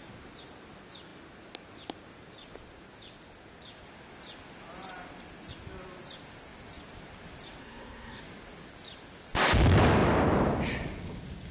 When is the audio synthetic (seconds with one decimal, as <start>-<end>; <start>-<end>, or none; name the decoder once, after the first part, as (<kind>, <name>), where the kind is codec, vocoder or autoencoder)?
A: 7.6-8.2 (codec, SNAC)